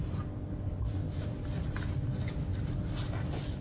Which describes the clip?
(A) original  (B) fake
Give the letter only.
A